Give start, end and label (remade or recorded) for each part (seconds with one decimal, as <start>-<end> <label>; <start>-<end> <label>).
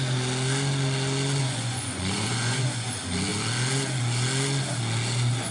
0.0-1.4 recorded; 1.4-2.9 remade; 2.9-5.5 recorded